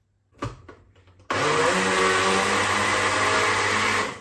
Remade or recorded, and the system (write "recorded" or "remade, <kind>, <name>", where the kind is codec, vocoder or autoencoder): recorded